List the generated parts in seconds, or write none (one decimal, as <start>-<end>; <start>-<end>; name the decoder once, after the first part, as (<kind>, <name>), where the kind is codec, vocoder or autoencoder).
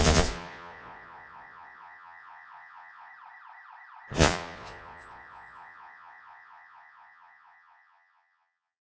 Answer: 0.0-3.1 (vocoder, Vocos); 4.1-8.8